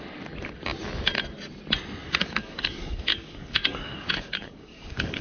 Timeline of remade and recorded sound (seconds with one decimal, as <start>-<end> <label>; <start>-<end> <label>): 0.0-2.0 recorded; 2.0-5.2 remade